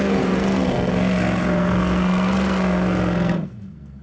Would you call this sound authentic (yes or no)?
no